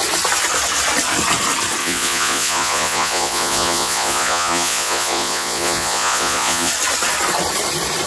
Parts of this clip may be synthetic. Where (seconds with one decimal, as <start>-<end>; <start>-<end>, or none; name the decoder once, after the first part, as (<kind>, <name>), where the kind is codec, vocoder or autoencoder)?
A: 1.8-6.7 (vocoder, Vocos)